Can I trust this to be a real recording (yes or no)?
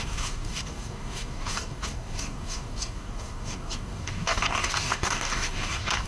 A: no